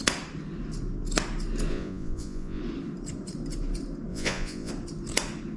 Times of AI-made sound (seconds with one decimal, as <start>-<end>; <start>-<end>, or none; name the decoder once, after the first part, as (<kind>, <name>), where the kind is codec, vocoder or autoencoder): 1.7-2.6 (vocoder, Vocos); 4.1-4.7

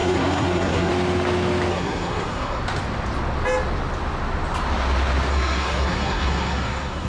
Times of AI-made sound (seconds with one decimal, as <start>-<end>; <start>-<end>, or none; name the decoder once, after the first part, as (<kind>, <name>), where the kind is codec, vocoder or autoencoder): 0.0-0.9 (codec, SNAC); 1.7-2.6; 5.3-7.1

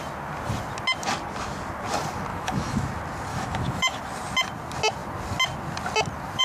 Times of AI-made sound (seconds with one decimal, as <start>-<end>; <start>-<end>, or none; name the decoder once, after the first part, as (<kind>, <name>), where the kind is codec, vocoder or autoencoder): 2.3-2.9 (autoencoder, DAC-VAE); 3.3-4.0